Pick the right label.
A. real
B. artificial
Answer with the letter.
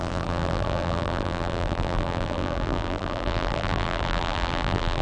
B